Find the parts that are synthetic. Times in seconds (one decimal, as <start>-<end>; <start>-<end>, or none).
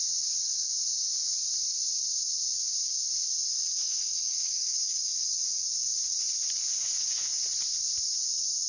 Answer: 3.7-6.0; 6.7-7.4